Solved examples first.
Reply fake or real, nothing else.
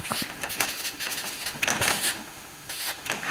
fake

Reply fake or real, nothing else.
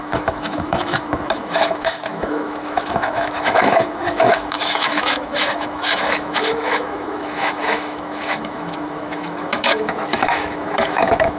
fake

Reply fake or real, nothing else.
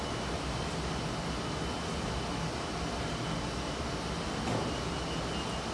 real